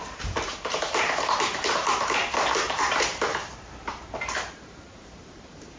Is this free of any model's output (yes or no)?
no